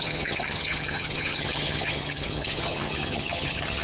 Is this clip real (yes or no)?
no